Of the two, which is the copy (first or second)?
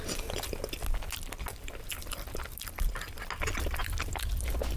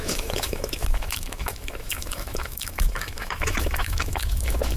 second